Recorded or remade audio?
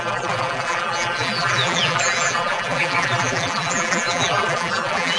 remade